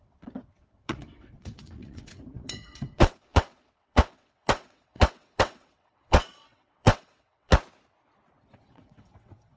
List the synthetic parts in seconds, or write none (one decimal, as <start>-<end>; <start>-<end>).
0.0-7.5; 8.4-9.6